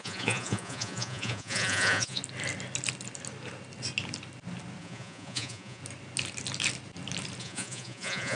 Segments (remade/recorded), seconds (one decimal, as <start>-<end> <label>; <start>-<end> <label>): 0.0-2.2 remade; 2.2-4.8 recorded; 4.8-5.8 remade; 5.8-7.4 recorded; 7.4-8.4 remade